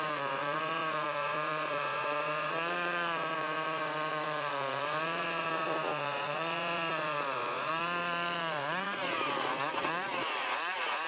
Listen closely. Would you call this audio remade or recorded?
remade